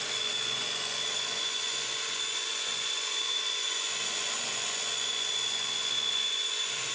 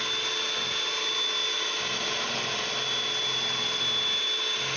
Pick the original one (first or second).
second